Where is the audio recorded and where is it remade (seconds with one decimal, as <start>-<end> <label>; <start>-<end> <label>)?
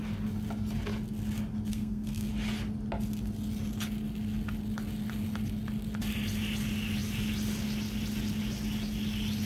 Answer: 0.0-1.7 recorded; 1.7-2.3 remade; 2.3-9.5 recorded